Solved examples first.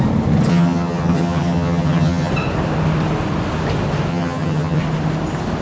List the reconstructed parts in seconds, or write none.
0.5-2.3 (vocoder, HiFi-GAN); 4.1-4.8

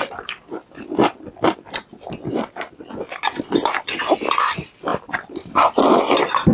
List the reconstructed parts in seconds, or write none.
none

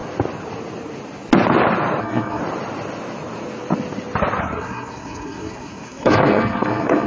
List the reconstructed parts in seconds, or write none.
2.0-2.4 (codec, SNAC); 4.4-7.1

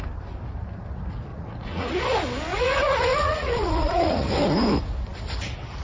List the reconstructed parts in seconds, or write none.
1.3-2.0 (vocoder, Vocos); 2.5-4.3

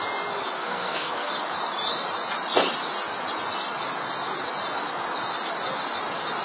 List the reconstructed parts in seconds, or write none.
0.6-1.3 (codec, SNAC)

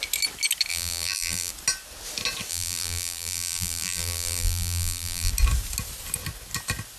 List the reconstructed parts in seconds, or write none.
0.7-1.5 (vocoder, BigVGAN v2); 2.5-5.3

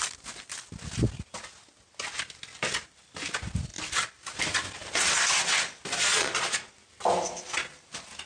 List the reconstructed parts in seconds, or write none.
6.1-6.7 (vocoder, Vocos)